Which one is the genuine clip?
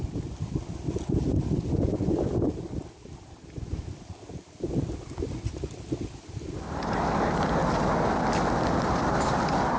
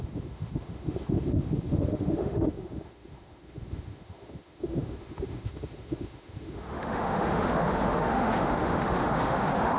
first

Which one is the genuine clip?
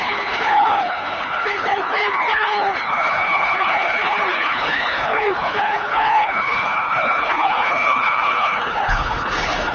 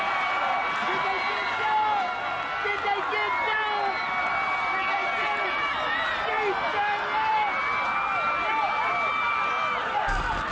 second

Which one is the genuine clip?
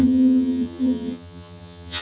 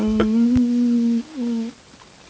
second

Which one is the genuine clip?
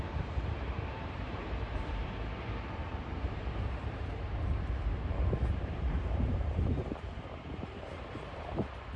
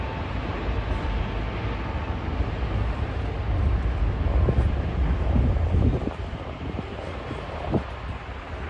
second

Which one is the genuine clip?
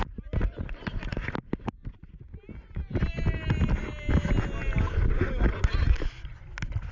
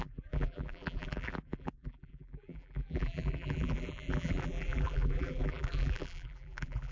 first